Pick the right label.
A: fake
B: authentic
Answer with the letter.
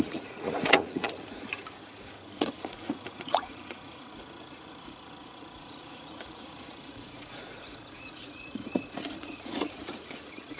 A